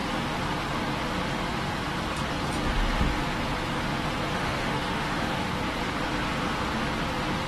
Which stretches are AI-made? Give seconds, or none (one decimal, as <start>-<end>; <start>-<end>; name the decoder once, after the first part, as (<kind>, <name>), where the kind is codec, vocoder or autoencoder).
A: 4.3-5.5 (autoencoder, DAC-VAE)